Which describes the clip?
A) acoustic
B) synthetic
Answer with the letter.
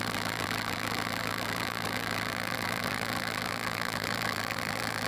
B